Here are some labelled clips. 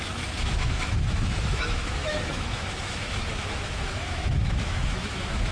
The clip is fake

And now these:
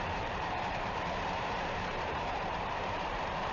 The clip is fake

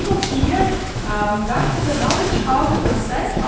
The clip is fake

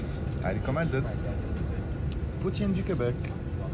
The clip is real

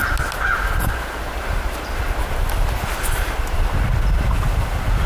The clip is real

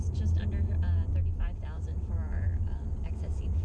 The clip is real